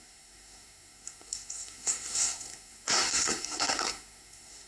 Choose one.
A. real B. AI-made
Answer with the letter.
B